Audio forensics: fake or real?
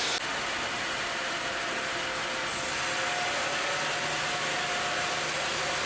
real